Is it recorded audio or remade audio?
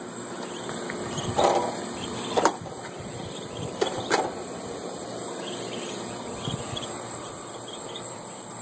remade